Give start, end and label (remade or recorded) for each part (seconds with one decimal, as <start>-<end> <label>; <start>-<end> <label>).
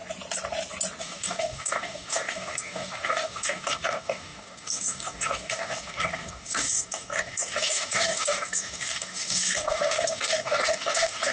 0.0-1.0 recorded; 1.0-11.3 remade